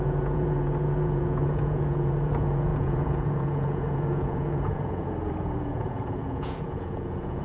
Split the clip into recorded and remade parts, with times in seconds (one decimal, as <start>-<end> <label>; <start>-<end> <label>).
0.0-7.4 remade